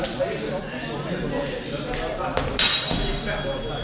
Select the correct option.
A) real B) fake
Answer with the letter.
A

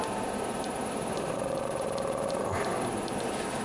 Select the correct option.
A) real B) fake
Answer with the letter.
B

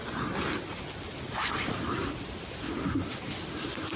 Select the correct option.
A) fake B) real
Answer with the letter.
B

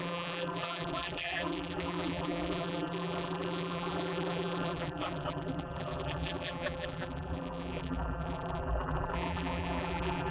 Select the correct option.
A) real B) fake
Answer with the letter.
B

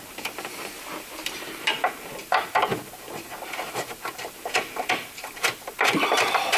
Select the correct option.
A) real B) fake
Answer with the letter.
B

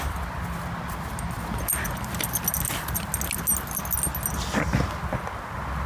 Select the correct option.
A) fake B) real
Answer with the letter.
B